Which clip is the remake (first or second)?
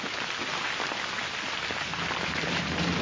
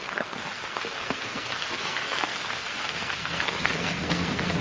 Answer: second